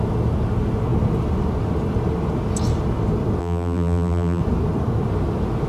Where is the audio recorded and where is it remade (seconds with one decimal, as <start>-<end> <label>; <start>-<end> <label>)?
0.0-3.4 recorded; 3.4-4.4 remade; 4.4-5.7 recorded